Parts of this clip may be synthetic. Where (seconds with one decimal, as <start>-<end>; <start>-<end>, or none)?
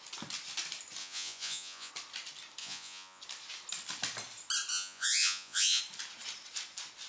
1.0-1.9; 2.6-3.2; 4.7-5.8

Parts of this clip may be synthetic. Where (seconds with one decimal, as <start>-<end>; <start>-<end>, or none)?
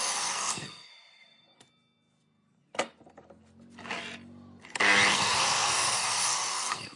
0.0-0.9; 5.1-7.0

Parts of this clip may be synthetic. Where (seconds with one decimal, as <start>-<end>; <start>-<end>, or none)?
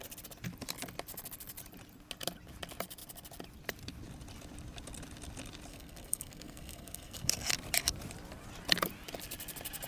5.7-7.5